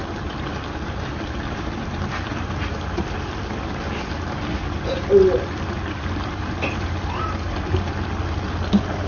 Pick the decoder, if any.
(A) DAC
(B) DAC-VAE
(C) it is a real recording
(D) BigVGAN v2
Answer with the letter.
D